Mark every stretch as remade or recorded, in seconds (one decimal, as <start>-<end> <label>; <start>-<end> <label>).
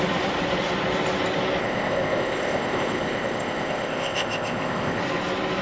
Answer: 0.0-1.6 recorded; 1.6-5.0 remade; 5.0-5.6 recorded